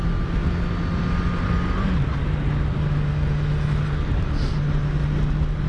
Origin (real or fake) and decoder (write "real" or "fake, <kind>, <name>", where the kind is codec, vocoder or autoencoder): real